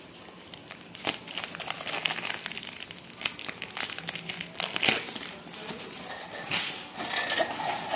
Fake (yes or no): no